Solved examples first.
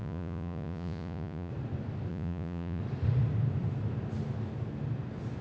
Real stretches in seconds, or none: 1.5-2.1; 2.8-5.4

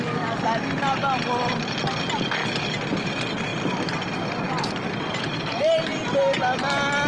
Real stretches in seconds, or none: 0.0-7.1

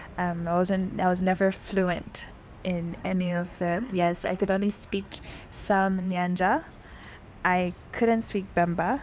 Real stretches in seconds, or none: 0.0-1.2; 2.3-3.0; 6.4-9.0

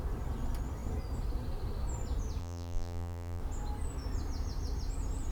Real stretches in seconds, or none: 0.0-2.4; 3.4-5.3